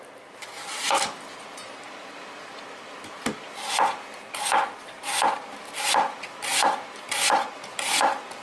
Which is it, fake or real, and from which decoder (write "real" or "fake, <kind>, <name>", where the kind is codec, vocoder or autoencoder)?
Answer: real